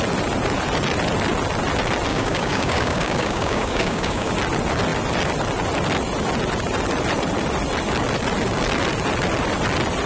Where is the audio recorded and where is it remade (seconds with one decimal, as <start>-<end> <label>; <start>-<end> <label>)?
0.0-2.1 recorded; 2.1-4.3 remade; 4.3-10.1 recorded